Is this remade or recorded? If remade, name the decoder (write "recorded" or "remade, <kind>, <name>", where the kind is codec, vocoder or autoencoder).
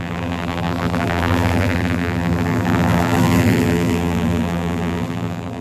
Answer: remade, vocoder, BigVGAN v2